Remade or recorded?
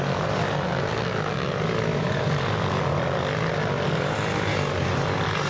recorded